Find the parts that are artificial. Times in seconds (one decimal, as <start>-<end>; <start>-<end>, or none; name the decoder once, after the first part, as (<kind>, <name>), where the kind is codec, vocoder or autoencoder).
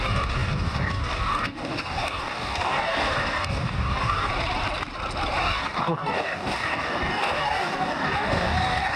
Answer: 0.0-4.3 (codec, DAC); 5.4-9.0